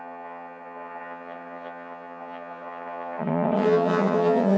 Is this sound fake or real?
fake